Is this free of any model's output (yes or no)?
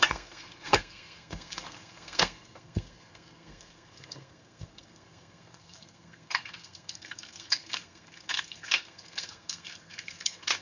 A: no